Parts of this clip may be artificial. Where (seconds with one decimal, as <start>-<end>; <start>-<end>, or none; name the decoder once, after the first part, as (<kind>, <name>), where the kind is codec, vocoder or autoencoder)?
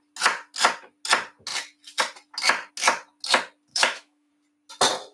3.7-4.3 (autoencoder, DAC-VAE)